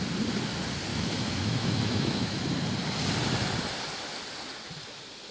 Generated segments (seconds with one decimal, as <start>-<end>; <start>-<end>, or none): 0.9-2.4